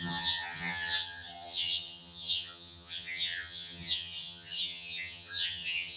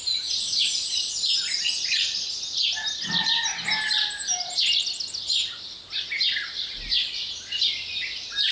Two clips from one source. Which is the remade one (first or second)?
first